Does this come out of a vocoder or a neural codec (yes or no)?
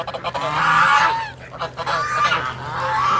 no